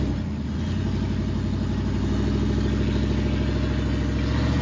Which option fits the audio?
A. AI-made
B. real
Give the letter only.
B